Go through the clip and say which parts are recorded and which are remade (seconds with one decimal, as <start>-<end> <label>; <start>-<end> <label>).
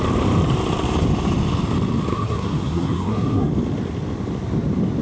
0.0-2.1 recorded; 2.1-3.5 remade; 3.5-5.0 recorded